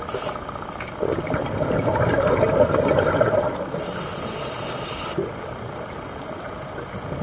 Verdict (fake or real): real